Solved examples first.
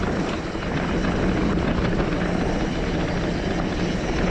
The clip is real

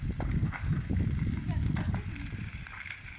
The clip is real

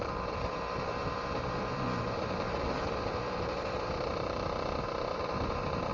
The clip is fake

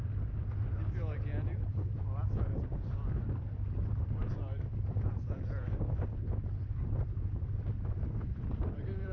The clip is fake